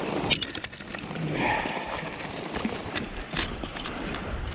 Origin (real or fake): real